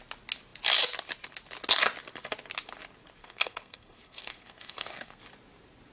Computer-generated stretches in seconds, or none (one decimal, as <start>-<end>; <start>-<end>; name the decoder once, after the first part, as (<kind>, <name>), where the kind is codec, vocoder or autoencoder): 3.2-5.2 (codec, SNAC)